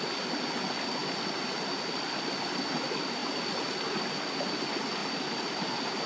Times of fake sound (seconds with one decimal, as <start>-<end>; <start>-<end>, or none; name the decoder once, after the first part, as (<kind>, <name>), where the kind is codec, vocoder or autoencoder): none